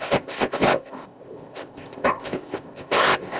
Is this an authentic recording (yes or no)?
no